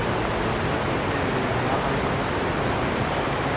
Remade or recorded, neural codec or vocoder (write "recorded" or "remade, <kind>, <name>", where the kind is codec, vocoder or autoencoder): recorded